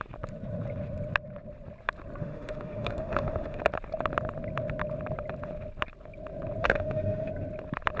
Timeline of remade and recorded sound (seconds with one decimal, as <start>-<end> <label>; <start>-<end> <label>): 0.0-2.2 recorded; 2.2-3.6 remade; 3.6-6.6 recorded; 6.6-7.3 remade; 7.3-8.0 recorded